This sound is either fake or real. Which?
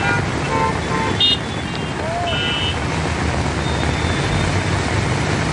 real